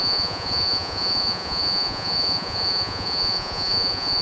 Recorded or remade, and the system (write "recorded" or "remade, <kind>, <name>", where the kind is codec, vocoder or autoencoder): remade, vocoder, Vocos